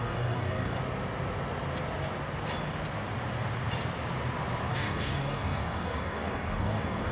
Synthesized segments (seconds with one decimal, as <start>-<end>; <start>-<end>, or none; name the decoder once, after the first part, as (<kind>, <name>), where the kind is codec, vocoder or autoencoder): 0.0-0.8 (codec, DAC); 4.7-7.1